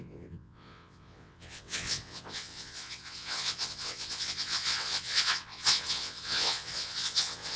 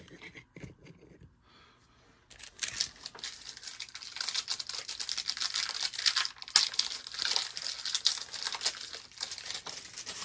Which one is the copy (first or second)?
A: first